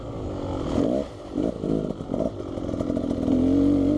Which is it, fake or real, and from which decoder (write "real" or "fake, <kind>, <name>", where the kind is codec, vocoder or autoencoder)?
real